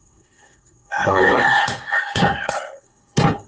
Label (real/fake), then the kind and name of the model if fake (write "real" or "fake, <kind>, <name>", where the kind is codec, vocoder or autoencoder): fake, codec, SNAC